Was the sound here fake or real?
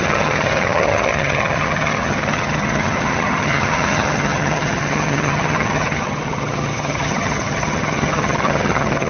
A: fake